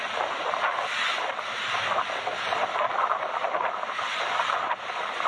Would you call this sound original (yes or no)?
yes